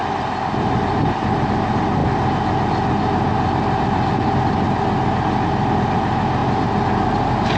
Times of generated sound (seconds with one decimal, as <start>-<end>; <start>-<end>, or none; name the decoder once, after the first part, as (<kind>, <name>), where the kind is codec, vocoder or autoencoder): 0.0-1.5 (vocoder, BigVGAN v2)